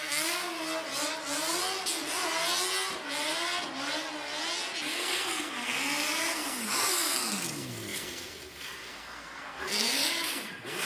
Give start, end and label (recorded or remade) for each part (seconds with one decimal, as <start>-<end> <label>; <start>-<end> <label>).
0.0-0.4 remade; 0.4-4.9 recorded; 4.9-10.8 remade